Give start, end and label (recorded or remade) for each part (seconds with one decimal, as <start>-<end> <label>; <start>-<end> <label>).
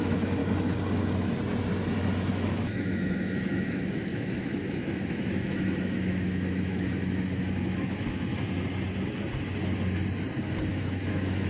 0.0-0.4 remade; 0.4-2.3 recorded; 2.3-8.3 remade; 8.3-10.7 recorded; 10.7-11.5 remade